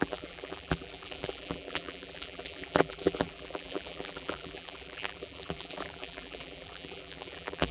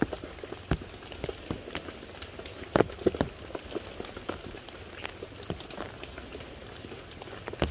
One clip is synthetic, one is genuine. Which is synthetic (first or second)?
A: first